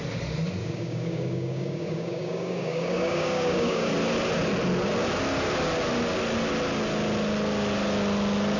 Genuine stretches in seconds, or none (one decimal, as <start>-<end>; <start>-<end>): 0.0-0.6; 3.9-8.6